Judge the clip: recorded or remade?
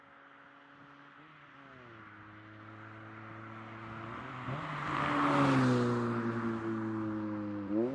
recorded